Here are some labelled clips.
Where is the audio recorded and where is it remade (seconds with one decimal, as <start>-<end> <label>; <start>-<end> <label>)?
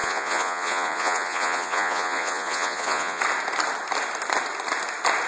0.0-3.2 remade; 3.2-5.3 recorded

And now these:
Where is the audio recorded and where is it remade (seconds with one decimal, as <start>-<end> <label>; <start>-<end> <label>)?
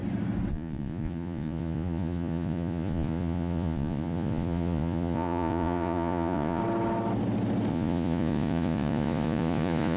0.0-0.5 recorded; 0.5-6.6 remade; 6.6-7.7 recorded; 7.7-10.0 remade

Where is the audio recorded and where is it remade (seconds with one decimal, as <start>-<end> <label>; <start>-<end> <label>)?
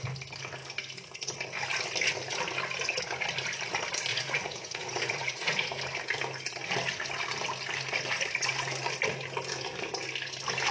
0.0-4.1 recorded; 4.1-5.8 remade; 5.8-10.7 recorded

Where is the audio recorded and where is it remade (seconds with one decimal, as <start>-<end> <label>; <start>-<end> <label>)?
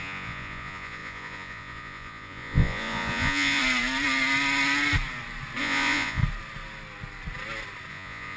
0.0-3.6 remade; 3.6-5.6 recorded; 5.6-6.2 remade; 6.2-7.9 recorded; 7.9-8.4 remade